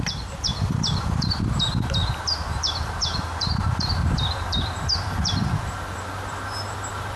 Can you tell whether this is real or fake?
fake